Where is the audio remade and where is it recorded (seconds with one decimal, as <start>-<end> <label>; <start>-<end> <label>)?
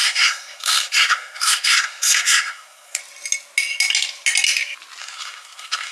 0.0-3.0 remade; 3.0-5.0 recorded; 5.0-5.9 remade